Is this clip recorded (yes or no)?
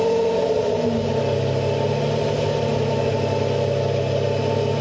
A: yes